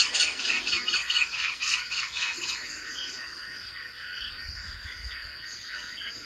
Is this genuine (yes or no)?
no